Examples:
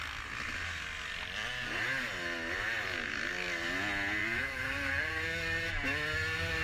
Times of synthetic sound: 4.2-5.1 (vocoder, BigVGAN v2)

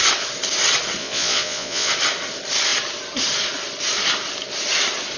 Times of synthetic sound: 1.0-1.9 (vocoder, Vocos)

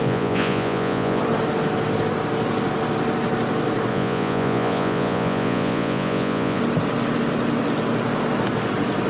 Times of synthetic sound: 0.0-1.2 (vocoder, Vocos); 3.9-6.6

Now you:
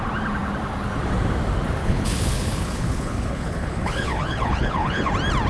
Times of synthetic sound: 1.8-5.1 (codec, HILCodec)

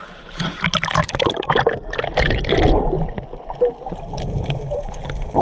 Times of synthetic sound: 0.0-0.6 (codec, HILCodec)

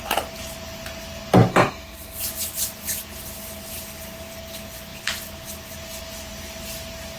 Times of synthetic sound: 1.5-2.2 (codec, SNAC)

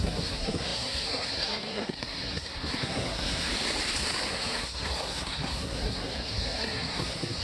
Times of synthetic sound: 0.0-3.5 (codec, SNAC); 4.3-7.4

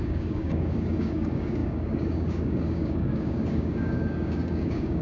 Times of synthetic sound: 0.0-5.0 (codec, DAC)